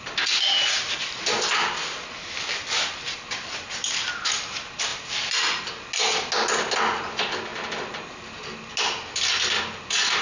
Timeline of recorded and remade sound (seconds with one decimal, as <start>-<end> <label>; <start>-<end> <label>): 0.0-10.2 recorded